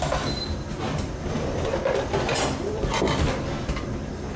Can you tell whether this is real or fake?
real